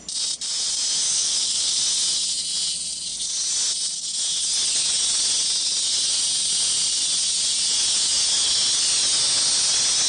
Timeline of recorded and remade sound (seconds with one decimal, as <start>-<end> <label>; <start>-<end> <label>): 0.0-1.1 recorded; 1.1-1.8 remade; 1.8-10.1 recorded